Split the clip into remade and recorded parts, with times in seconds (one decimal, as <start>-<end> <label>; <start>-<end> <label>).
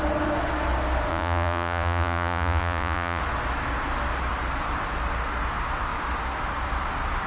0.0-1.1 recorded; 1.1-3.2 remade; 3.2-7.3 recorded